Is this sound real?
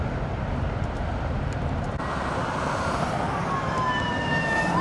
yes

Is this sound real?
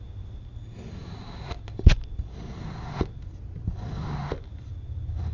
yes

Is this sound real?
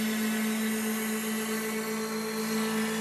yes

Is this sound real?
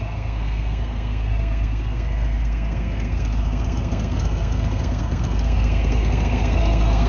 no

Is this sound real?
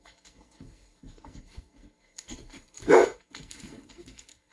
no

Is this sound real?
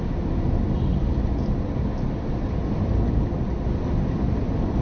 yes